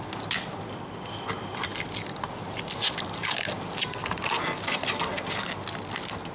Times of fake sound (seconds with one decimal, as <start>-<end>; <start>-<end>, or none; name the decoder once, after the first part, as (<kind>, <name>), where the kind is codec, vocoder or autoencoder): none